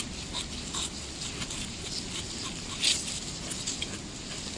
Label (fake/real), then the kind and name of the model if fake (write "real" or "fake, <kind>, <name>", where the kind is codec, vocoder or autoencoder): real